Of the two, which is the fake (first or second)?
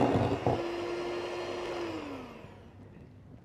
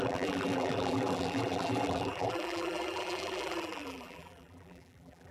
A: second